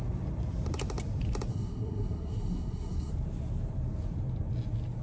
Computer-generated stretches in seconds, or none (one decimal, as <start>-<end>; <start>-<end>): 1.5-3.1